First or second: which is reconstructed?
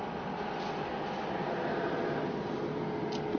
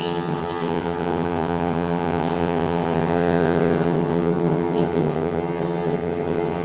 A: second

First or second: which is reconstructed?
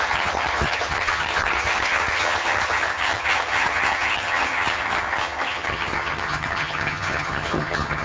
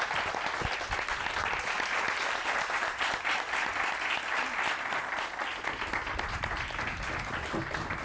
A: first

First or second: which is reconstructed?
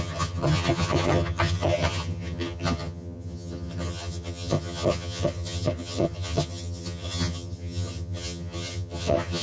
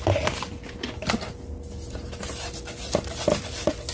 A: first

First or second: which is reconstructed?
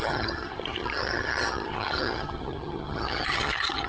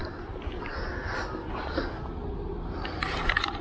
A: first